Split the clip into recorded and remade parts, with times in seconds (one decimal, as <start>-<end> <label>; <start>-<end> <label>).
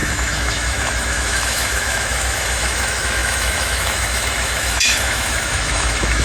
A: 0.0-6.2 remade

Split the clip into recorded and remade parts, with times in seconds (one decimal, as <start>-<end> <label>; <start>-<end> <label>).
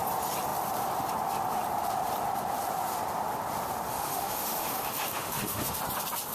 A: 0.0-3.9 recorded; 3.9-5.8 remade; 5.8-6.3 recorded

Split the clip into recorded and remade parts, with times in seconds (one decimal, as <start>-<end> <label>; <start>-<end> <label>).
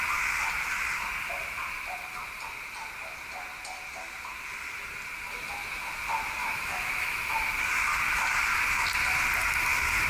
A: 0.0-6.4 recorded; 6.4-7.5 remade; 7.5-10.1 recorded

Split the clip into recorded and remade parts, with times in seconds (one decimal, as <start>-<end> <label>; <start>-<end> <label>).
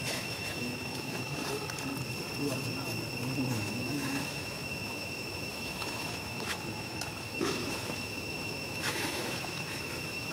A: 0.0-1.4 remade; 1.4-3.5 recorded; 3.5-10.3 remade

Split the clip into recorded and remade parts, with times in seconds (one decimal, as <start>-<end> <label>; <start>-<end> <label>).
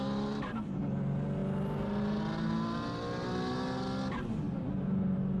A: 0.0-5.4 recorded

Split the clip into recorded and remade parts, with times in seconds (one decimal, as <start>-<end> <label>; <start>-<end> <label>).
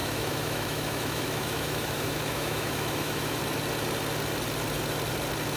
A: 0.0-3.4 remade; 3.4-5.6 recorded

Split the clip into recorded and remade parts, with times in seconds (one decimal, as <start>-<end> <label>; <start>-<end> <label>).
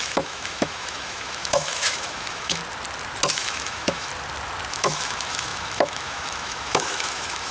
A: 0.0-2.6 remade; 2.6-3.3 recorded; 3.3-4.1 remade; 4.1-4.7 recorded; 4.7-7.5 remade